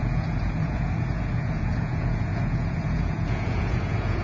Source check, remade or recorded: remade